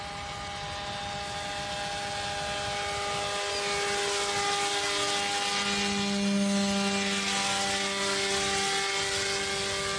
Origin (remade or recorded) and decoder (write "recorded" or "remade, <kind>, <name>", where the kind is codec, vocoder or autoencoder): recorded